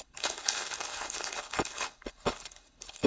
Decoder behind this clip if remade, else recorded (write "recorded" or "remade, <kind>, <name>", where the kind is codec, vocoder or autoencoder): remade, codec, HILCodec